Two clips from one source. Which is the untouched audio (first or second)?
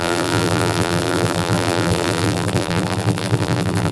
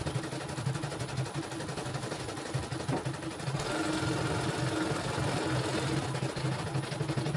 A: second